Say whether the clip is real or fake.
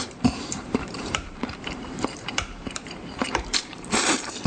fake